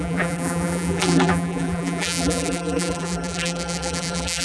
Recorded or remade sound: remade